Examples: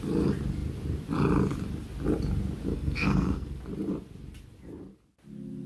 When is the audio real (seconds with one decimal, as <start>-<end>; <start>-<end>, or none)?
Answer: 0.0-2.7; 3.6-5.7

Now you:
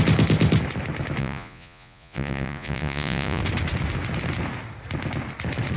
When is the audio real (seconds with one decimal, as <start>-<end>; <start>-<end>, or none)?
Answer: 0.0-1.2; 3.4-5.8

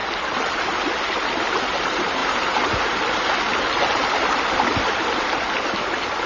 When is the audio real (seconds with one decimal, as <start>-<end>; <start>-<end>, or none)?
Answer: 0.0-6.3

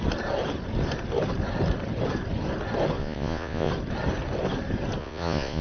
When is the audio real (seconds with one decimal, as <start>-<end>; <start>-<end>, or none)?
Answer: 0.0-3.0; 3.7-5.0

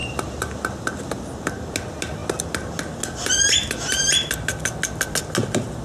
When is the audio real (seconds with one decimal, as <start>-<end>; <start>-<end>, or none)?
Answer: 0.0-5.8

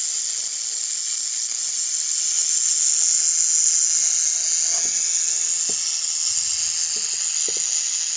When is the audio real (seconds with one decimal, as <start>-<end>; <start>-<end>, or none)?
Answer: 0.0-8.2